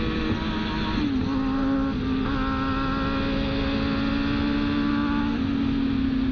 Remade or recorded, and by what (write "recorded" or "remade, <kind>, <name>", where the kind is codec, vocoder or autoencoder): recorded